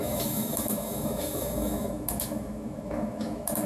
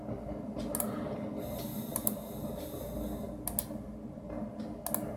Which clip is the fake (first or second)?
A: first